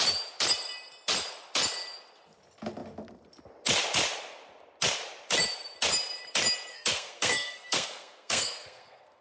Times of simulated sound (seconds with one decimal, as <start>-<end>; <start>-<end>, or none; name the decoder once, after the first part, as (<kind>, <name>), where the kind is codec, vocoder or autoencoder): 6.7-9.2 (codec, SNAC)